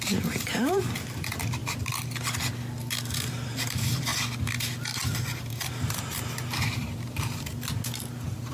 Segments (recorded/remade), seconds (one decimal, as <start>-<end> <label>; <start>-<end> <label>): 0.0-1.6 remade; 1.6-3.3 recorded; 3.3-4.1 remade; 4.1-5.5 recorded; 5.5-7.5 remade; 7.5-8.5 recorded